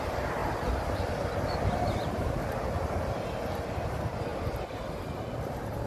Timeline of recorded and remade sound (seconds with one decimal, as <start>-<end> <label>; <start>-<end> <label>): 0.0-5.9 recorded